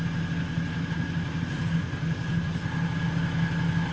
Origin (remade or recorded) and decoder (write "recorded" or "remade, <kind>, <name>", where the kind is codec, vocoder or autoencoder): recorded